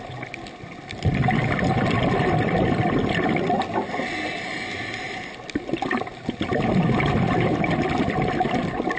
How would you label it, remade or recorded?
recorded